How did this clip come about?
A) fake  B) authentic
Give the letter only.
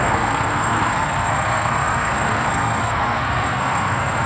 A